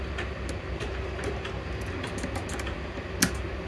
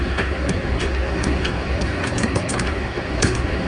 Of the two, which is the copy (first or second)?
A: second